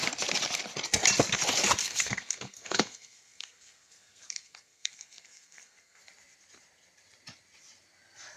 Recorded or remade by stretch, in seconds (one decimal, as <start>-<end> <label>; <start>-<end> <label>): 0.0-1.8 recorded; 1.8-6.0 remade; 6.0-8.4 recorded